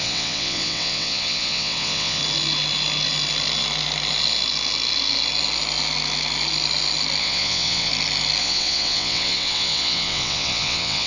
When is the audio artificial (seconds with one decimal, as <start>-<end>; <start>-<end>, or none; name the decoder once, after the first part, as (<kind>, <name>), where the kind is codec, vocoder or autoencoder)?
0.0-2.2 (vocoder, WaveNeXt); 7.2-7.9; 8.4-11.1